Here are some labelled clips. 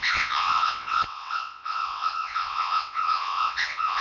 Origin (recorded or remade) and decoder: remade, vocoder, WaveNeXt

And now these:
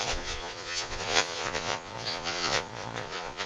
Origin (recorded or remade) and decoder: remade, vocoder, Vocos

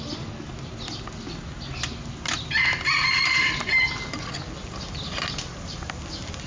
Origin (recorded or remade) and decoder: recorded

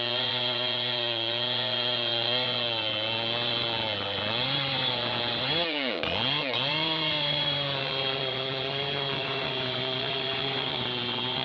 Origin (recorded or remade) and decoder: remade, vocoder, Vocos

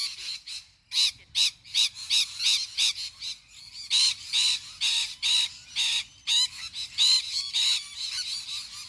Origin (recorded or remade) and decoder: recorded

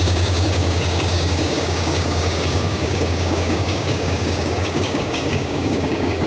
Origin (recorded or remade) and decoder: remade, codec, DAC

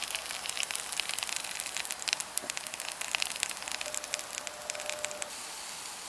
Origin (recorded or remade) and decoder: recorded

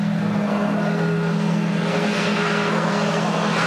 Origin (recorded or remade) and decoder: remade, codec, SNAC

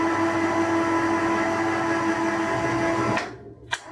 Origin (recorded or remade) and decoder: recorded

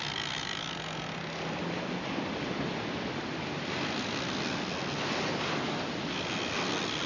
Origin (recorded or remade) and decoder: recorded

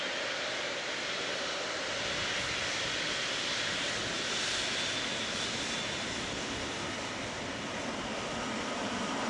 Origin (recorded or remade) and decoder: remade, vocoder, BigVGAN v2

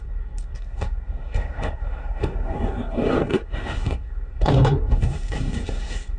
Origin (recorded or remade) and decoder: remade, codec, SNAC